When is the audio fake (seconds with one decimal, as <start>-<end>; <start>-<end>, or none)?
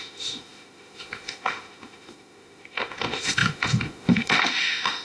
0.0-5.0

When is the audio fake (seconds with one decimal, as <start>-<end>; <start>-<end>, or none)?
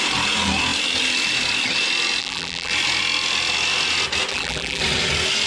2.2-2.7; 4.3-4.8